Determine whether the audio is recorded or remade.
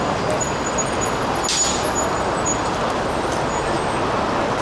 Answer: recorded